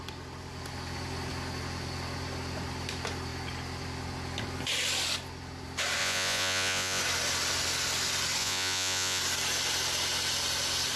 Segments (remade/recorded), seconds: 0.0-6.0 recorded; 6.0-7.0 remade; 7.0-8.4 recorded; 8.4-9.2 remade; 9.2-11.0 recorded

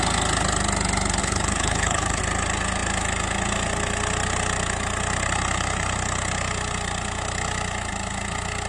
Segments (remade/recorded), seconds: 0.0-1.2 recorded; 1.2-2.2 remade; 2.2-8.7 recorded

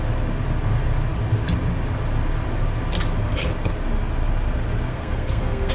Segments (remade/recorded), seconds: 0.0-4.9 recorded; 4.9-5.7 remade

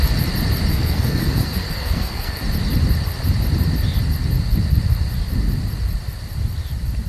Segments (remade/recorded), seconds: 0.0-0.7 recorded; 0.7-2.4 remade; 2.4-7.1 recorded